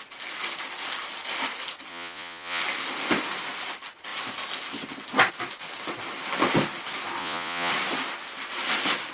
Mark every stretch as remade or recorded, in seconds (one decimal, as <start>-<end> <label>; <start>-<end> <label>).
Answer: 0.0-1.9 recorded; 1.9-2.6 remade; 2.6-7.2 recorded; 7.2-7.7 remade; 7.7-9.1 recorded